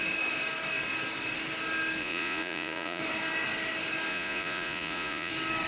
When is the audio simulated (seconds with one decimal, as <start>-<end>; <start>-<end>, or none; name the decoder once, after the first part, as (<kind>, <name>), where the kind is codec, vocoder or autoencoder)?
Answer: 2.0-3.0 (vocoder, Vocos); 4.1-5.3